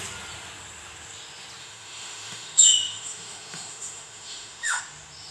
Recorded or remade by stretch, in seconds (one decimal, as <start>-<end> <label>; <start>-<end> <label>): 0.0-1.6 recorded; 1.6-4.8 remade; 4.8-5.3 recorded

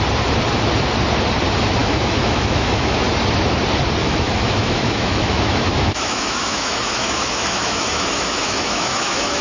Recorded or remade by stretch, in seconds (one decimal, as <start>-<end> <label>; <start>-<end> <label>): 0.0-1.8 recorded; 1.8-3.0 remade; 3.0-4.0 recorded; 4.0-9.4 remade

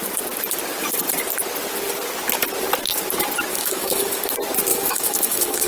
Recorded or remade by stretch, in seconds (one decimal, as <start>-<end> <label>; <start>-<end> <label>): 0.0-3.5 recorded; 3.5-4.2 remade; 4.2-4.7 recorded; 4.7-5.7 remade

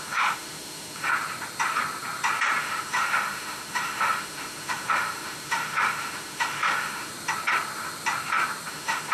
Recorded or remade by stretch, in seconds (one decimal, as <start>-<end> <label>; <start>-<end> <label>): 0.0-1.1 remade; 1.1-2.6 recorded; 2.6-7.1 remade; 7.1-8.7 recorded; 8.7-9.1 remade

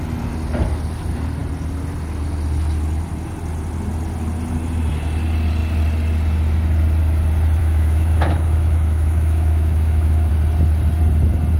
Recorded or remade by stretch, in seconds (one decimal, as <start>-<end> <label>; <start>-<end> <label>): 0.0-7.6 recorded; 7.6-10.3 remade; 10.3-11.6 recorded

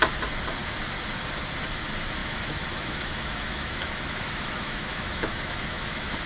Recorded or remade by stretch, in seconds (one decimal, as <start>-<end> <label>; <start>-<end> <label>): 0.0-2.2 recorded; 2.2-6.3 remade